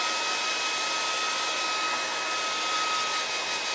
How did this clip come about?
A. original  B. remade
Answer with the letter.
A